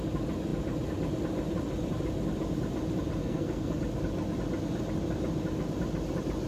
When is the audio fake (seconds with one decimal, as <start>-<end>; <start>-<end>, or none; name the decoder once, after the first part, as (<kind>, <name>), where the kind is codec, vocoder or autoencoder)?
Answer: 3.2-3.8 (codec, SNAC)